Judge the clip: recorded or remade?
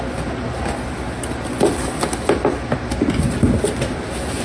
recorded